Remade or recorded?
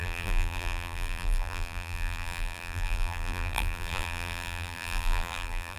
remade